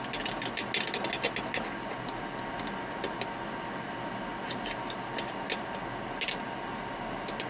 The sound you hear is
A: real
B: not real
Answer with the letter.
A